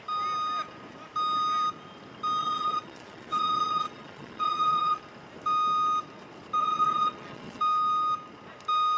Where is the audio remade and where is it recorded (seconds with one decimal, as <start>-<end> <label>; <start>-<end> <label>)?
0.0-2.4 recorded; 2.4-5.0 remade; 5.0-6.6 recorded; 6.6-7.6 remade; 7.6-9.0 recorded